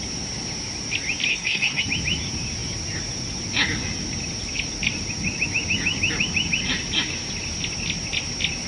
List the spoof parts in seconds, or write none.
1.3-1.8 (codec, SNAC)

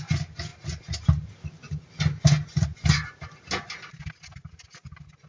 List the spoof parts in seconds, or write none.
none

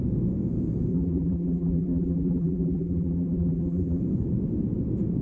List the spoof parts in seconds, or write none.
0.9-4.0 (vocoder, BigVGAN v2)

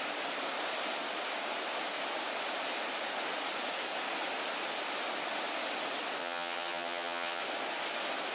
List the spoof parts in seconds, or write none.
6.2-7.4 (vocoder, HiFi-GAN)